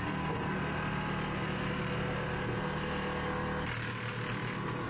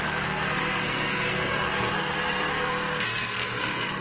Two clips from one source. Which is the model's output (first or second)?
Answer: second